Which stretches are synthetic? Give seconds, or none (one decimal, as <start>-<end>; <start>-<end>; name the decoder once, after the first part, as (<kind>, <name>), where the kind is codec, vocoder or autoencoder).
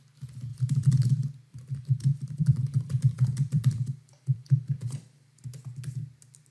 0.5-1.1 (vocoder, BigVGAN v2); 1.5-5.4